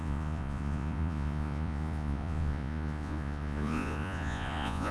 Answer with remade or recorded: remade